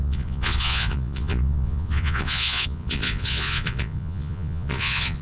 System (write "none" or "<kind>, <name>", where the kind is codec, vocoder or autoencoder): vocoder, Vocos